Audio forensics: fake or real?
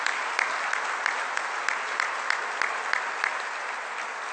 real